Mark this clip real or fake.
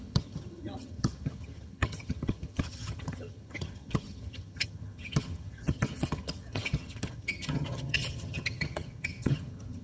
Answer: fake